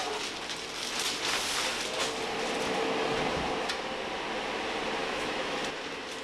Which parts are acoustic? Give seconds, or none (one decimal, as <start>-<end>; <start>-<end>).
0.0-5.0; 5.6-6.2